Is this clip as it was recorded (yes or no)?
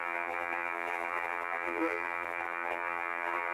no